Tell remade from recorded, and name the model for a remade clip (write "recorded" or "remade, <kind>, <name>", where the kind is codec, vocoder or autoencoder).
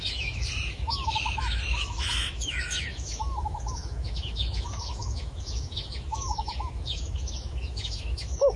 remade, autoencoder, DAC-VAE